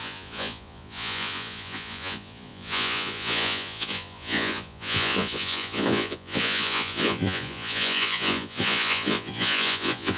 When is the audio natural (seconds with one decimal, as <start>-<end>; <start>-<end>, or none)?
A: none

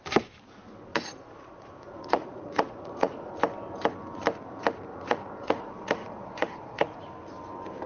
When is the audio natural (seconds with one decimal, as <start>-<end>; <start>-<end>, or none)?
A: 0.0-0.9; 3.3-4.9; 7.0-7.9

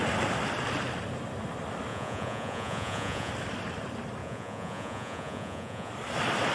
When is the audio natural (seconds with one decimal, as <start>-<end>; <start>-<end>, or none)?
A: 0.0-1.9; 3.3-4.2; 5.9-6.5

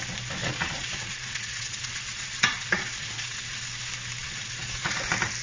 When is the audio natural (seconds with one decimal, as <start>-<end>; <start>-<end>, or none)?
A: 0.0-0.4; 3.6-4.2; 5.0-5.4

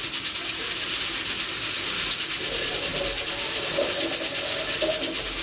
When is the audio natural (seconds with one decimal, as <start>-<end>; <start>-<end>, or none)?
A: 0.0-5.4

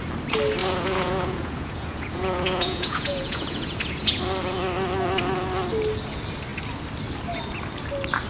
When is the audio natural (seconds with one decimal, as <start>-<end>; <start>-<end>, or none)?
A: 0.0-0.6; 4.2-8.3